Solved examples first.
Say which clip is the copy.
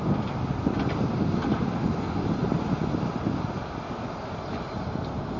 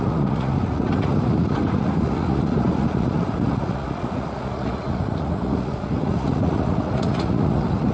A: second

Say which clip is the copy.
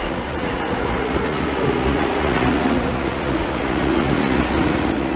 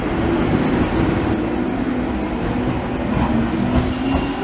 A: first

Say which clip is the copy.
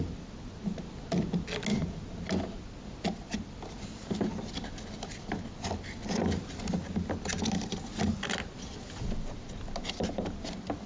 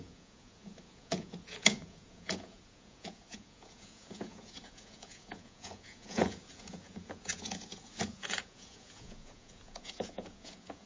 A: second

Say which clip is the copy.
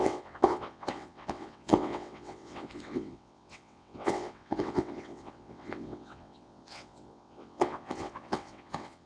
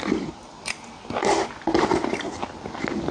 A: first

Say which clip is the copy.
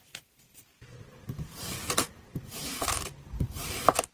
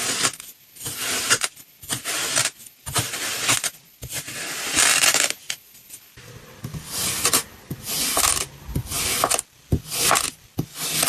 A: first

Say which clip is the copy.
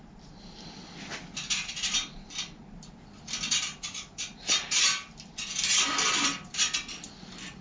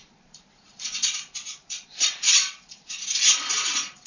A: second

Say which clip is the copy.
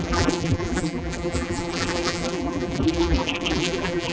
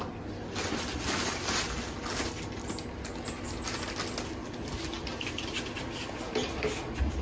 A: first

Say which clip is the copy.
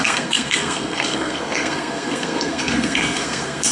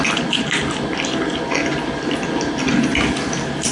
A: first